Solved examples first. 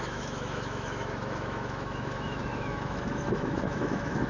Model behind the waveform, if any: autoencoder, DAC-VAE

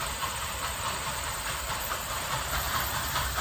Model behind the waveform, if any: vocoder, BigVGAN v2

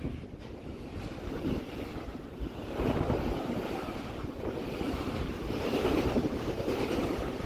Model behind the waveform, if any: vocoder, BigVGAN v2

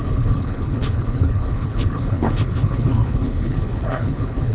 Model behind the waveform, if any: codec, HILCodec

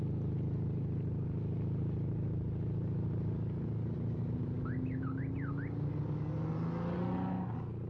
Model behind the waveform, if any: none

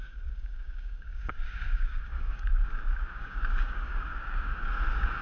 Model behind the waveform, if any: codec, DAC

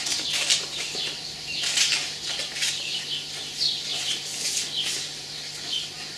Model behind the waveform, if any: none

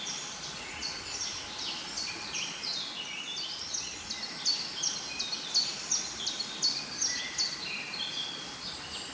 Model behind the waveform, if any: none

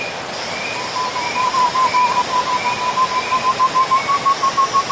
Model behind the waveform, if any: none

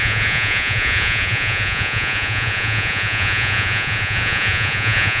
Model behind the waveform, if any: vocoder, Vocos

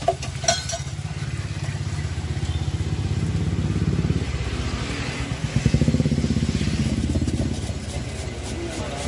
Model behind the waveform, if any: none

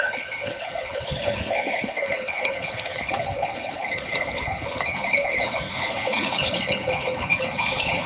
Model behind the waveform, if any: codec, HILCodec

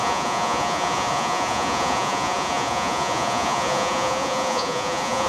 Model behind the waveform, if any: vocoder, Vocos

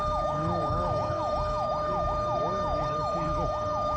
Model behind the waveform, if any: autoencoder, DAC-VAE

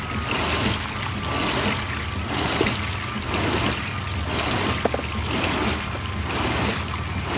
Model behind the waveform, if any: none